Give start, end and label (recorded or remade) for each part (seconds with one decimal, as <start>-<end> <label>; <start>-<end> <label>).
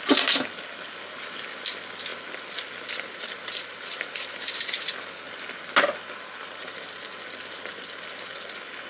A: 0.0-8.9 recorded